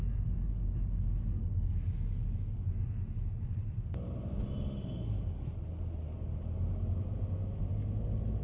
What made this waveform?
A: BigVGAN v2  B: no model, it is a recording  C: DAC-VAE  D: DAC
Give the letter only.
B